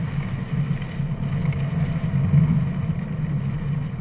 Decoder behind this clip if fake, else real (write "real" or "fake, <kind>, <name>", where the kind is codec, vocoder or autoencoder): real